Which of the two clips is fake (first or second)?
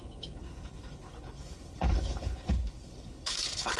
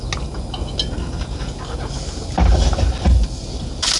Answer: first